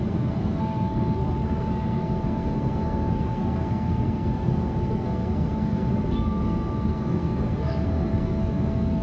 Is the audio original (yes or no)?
no